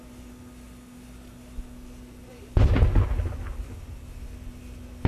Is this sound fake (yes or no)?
no